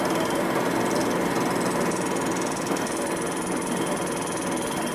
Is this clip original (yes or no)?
yes